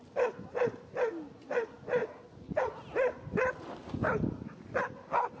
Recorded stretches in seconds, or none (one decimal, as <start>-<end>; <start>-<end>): 0.0-5.4